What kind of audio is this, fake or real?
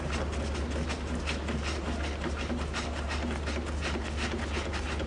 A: real